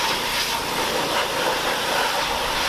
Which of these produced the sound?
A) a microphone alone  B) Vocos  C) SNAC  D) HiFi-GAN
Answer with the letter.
A